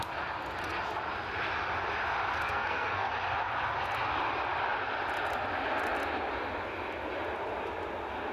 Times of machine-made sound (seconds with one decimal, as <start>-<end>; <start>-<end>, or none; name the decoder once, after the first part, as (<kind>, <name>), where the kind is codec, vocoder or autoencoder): 2.3-3.1 (codec, SNAC)